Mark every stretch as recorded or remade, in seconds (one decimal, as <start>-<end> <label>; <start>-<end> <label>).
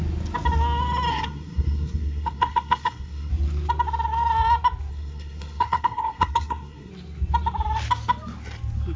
0.0-1.1 recorded; 1.1-3.3 remade; 3.3-4.9 recorded; 4.9-6.9 remade; 6.9-9.0 recorded